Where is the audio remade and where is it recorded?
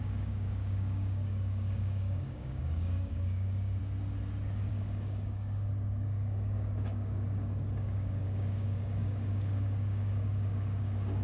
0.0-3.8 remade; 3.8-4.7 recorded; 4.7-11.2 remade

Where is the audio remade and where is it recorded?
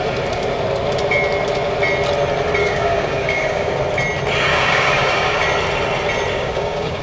0.0-2.6 recorded; 2.6-3.7 remade; 3.7-4.5 recorded; 4.5-5.4 remade; 5.4-6.3 recorded; 6.3-7.0 remade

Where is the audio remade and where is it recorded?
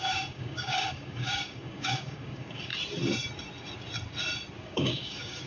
0.0-2.7 remade; 2.7-4.6 recorded; 4.6-5.5 remade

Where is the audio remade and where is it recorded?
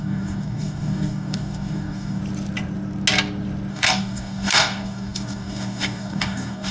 0.0-2.2 remade; 2.2-3.7 recorded; 3.7-6.7 remade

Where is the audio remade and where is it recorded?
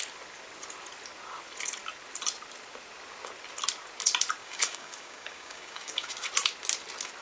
0.0-4.4 recorded; 4.4-6.1 remade; 6.1-7.2 recorded